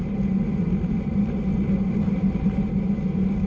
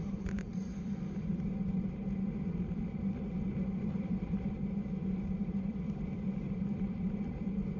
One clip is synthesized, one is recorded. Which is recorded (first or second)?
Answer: first